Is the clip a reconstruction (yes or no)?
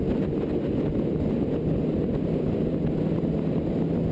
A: no